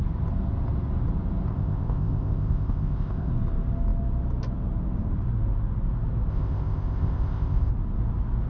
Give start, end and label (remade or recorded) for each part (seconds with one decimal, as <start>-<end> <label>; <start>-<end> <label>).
0.0-1.5 recorded; 1.5-3.3 remade; 3.3-6.3 recorded; 6.3-7.7 remade; 7.7-8.5 recorded